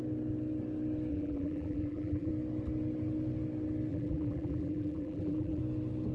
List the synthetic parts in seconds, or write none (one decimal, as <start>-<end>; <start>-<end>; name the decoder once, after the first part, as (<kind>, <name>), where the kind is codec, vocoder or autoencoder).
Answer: 1.1-2.3 (vocoder, BigVGAN v2); 3.9-5.6